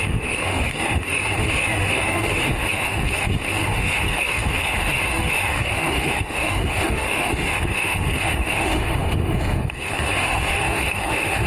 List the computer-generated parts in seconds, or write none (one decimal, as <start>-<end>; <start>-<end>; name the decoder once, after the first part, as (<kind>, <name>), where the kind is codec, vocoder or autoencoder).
0.0-11.5 (autoencoder, DAC-VAE)